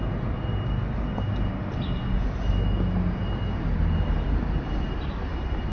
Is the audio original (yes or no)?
yes